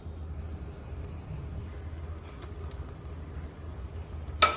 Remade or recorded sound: recorded